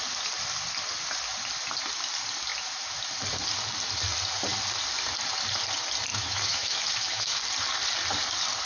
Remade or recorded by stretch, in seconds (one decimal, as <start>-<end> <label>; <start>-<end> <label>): 0.0-6.1 recorded; 6.1-7.4 remade; 7.4-8.7 recorded